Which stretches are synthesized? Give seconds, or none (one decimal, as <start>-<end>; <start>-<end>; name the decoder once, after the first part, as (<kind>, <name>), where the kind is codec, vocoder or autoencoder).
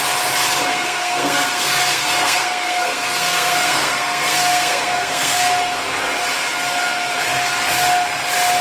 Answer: 0.7-5.4 (codec, SNAC)